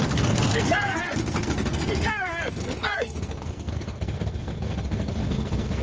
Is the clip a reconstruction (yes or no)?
yes